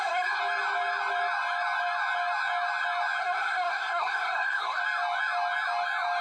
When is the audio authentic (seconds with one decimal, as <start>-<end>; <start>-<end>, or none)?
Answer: 0.4-3.2; 4.8-6.2